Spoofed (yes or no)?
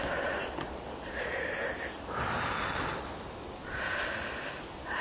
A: no